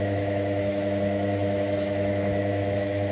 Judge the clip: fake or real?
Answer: fake